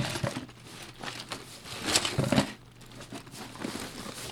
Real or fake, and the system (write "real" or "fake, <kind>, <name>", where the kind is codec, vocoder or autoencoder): real